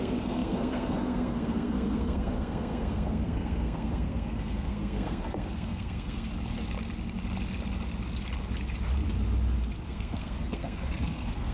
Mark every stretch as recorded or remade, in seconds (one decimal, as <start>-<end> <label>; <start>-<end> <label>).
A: 0.0-6.3 remade; 6.3-9.9 recorded; 9.9-11.5 remade